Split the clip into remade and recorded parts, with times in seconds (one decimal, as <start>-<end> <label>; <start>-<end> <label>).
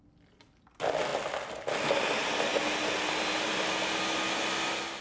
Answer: 0.0-5.0 recorded